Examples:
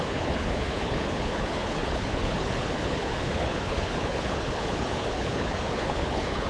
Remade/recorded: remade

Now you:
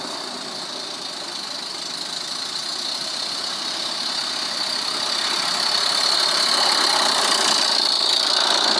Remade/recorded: recorded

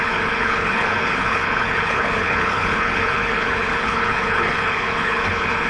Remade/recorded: remade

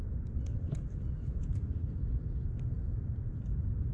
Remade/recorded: recorded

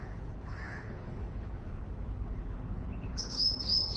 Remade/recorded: remade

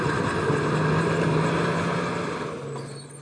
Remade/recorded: recorded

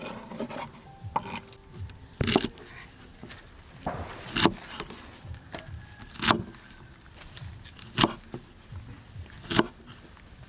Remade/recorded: recorded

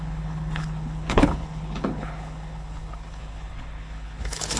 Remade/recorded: remade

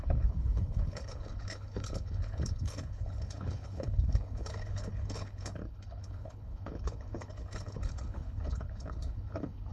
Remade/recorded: remade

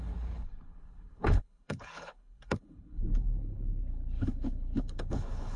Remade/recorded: remade